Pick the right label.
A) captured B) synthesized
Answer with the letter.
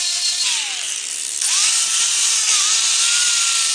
A